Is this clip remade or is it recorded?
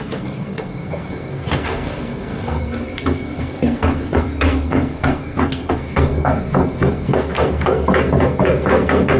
remade